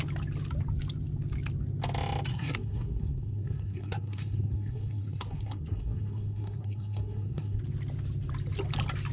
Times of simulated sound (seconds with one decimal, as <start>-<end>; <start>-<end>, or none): 2.3-7.6